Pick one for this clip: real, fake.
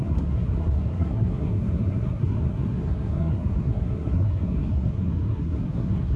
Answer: fake